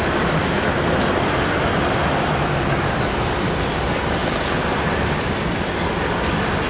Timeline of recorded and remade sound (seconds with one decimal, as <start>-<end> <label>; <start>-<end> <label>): 0.0-6.7 recorded